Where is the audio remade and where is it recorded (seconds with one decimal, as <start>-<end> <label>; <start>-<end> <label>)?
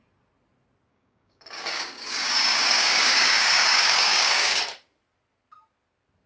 0.0-0.9 recorded; 0.9-4.6 remade; 4.6-6.3 recorded